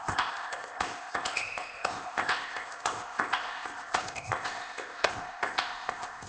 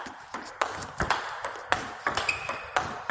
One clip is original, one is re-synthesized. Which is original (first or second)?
second